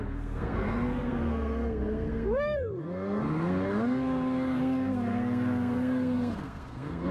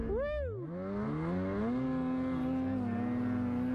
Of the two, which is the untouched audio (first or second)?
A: second